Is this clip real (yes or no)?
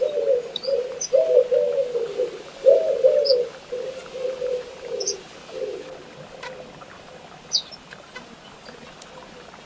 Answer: yes